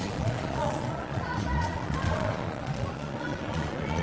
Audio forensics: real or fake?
fake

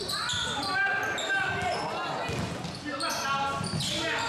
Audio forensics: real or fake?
real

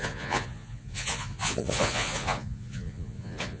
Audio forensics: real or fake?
fake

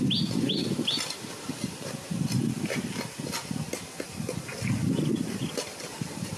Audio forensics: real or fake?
real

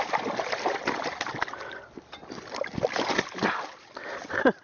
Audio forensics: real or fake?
real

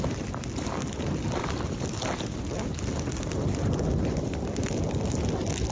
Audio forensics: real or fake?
real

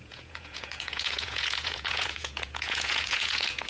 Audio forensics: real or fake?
fake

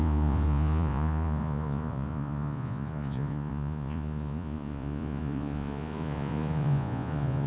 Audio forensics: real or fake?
fake